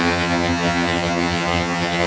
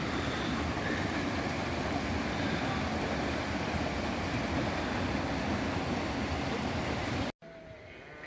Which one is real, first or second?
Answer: second